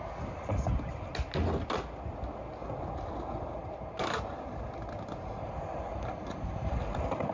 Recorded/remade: recorded